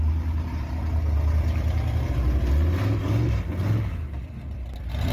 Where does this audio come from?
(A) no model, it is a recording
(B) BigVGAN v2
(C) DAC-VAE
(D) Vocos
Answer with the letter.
A